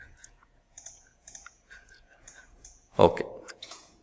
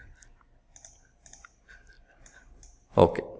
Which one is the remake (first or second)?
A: first